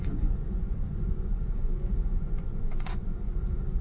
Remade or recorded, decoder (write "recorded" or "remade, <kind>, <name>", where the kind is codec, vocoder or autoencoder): remade, vocoder, Vocos